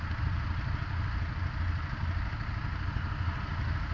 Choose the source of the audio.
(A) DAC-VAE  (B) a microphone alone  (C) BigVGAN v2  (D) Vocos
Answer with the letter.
B